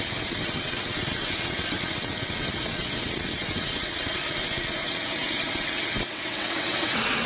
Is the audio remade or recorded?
remade